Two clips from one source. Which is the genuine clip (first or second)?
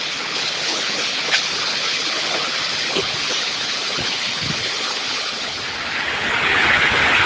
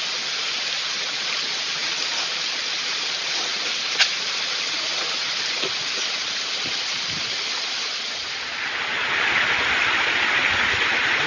second